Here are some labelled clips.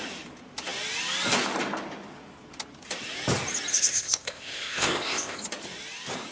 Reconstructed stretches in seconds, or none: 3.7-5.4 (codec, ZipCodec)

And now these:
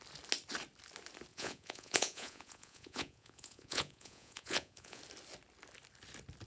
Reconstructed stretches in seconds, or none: 1.3-5.0 (vocoder, Vocos)

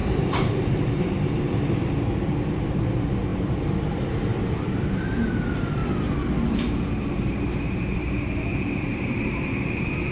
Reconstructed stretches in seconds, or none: 0.0-5.8 (vocoder, BigVGAN v2); 6.5-10.1

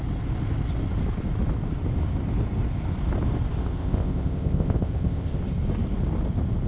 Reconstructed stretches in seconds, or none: 3.6-5.4 (codec, ZipCodec)

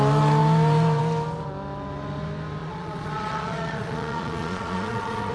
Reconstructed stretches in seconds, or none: 2.6-5.3 (vocoder, Vocos)

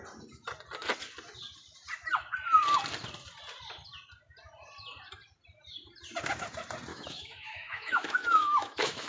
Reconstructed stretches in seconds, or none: 6.9-9.1 (autoencoder, DAC-VAE)